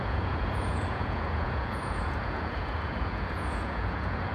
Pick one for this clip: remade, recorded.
remade